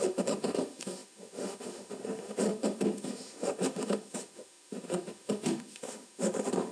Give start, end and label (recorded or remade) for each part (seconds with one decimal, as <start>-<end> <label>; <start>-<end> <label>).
0.0-6.7 remade